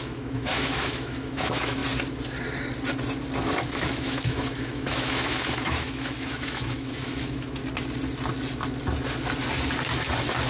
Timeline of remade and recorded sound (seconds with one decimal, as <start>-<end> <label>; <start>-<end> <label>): 0.0-1.8 remade; 1.8-3.6 recorded; 3.6-7.6 remade; 7.6-10.5 recorded